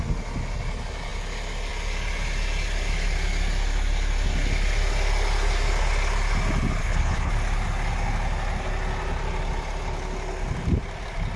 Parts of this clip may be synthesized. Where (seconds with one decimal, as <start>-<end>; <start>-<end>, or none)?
6.8-7.3